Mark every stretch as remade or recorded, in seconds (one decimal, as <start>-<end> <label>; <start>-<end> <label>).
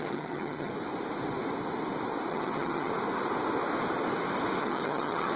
0.0-0.7 remade; 0.7-2.3 recorded; 2.3-2.9 remade; 2.9-4.6 recorded; 4.6-5.4 remade